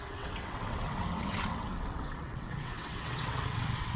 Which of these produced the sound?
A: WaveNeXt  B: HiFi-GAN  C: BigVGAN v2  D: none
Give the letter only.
A